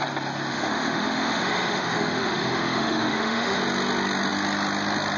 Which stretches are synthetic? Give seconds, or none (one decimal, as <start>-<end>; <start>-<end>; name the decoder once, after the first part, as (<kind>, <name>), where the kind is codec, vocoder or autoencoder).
0.5-3.6 (autoencoder, DAC-VAE)